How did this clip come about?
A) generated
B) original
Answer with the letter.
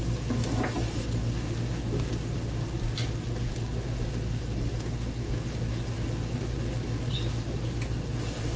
B